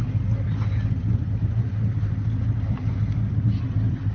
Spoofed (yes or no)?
no